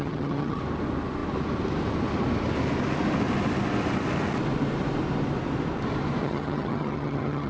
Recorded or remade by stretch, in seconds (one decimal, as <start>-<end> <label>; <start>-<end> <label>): 0.0-0.6 remade; 0.6-6.2 recorded; 6.2-7.5 remade